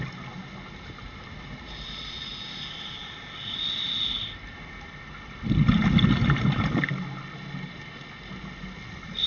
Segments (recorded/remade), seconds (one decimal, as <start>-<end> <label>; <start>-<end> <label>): 0.0-9.3 recorded